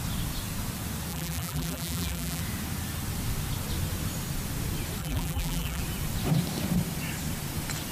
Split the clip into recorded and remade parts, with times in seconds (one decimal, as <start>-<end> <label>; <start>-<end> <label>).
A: 0.0-1.1 recorded; 1.1-2.4 remade; 2.4-5.0 recorded; 5.0-5.8 remade; 5.8-7.9 recorded